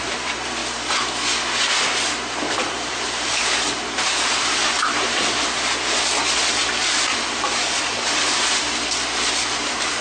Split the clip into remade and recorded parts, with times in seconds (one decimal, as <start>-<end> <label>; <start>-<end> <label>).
0.0-0.6 remade; 0.6-1.8 recorded; 1.8-4.6 remade; 4.6-7.4 recorded; 7.4-10.0 remade